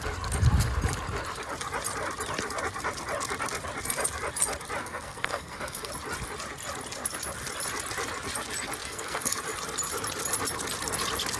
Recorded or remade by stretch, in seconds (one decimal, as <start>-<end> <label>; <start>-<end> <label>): 0.0-4.8 recorded; 4.8-5.9 remade; 5.9-8.8 recorded; 8.8-9.4 remade; 9.4-11.4 recorded